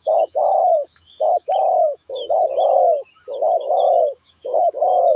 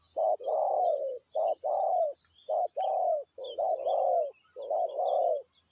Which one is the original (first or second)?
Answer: second